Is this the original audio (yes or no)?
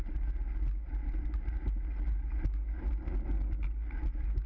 yes